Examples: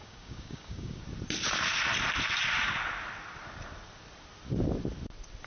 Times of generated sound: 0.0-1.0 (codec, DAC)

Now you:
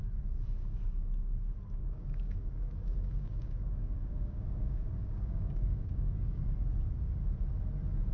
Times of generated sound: 1.8-6.4 (codec, DAC)

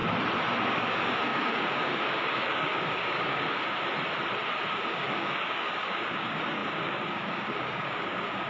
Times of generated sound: 0.5-3.8 (codec, DAC); 4.7-8.5

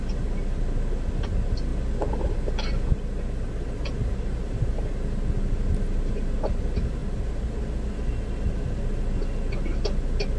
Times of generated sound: none

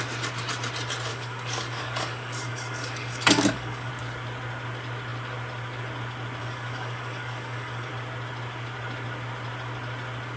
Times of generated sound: 1.1-3.9 (codec, DAC); 6.4-7.9